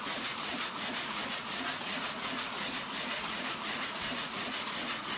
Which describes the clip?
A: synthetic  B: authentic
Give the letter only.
A